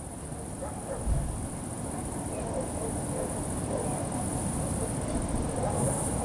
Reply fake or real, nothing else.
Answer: real